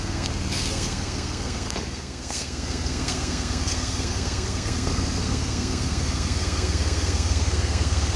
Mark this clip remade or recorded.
remade